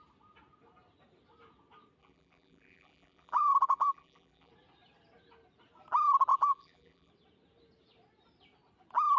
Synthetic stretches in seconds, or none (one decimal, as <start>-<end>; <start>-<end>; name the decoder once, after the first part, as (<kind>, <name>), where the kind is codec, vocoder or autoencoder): 2.0-4.5 (vocoder, BigVGAN v2); 6.3-7.1